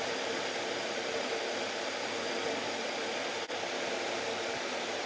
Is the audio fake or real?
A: real